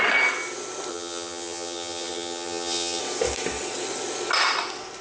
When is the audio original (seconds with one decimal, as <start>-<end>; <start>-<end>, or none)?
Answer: 0.0-0.9; 3.0-5.0